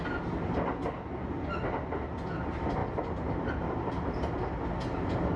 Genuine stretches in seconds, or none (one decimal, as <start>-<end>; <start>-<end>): 0.0-5.4